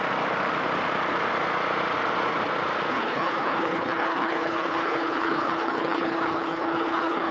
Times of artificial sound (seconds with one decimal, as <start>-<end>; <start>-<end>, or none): 2.9-7.3